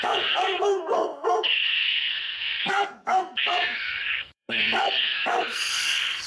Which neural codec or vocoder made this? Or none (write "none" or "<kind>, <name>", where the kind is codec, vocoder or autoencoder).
codec, SNAC